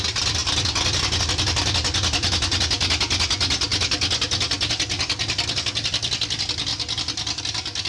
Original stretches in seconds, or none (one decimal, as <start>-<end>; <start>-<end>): 0.0-7.9